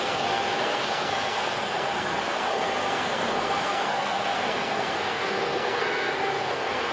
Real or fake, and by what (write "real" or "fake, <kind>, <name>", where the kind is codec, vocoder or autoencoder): fake, codec, SNAC